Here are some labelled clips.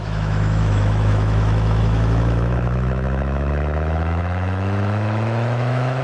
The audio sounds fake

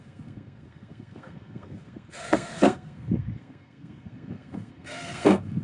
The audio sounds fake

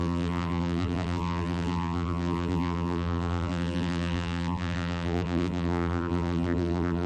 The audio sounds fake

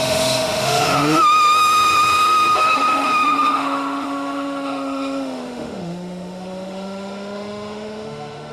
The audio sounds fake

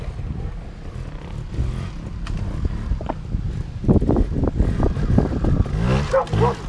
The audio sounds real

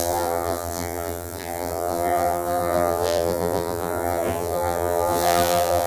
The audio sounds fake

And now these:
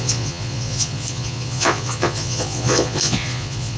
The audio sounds fake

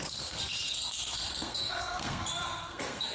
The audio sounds fake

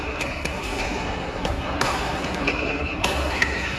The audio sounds fake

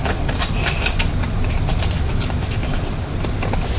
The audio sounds real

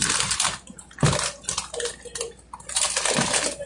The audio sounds real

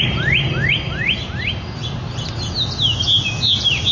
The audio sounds real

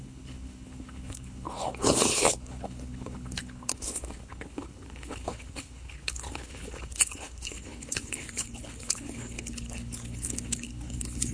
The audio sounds fake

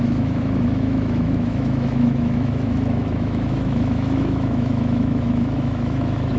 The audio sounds fake